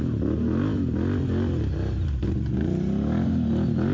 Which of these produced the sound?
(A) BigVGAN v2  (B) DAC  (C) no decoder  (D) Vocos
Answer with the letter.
C